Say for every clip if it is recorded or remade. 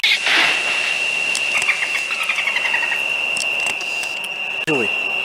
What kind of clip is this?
recorded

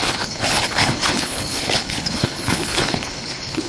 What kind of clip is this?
remade